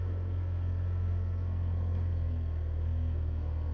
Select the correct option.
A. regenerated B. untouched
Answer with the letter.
A